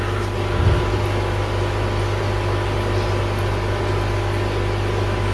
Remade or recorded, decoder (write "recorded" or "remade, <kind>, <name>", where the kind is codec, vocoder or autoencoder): recorded